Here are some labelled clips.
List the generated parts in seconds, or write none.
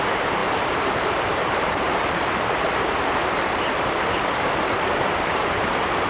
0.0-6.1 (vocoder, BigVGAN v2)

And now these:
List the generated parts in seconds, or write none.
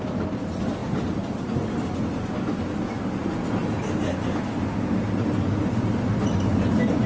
none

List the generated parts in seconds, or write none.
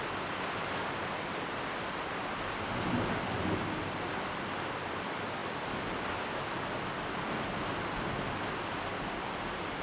none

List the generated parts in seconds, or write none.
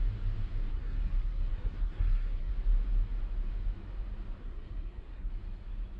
0.7-2.5 (codec, SNAC); 4.4-5.3